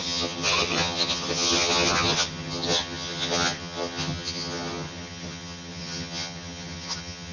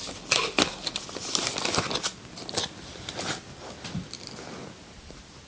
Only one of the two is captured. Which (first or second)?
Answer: second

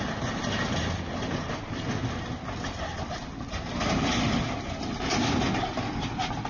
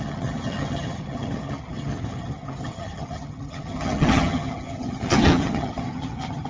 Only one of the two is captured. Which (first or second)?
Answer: first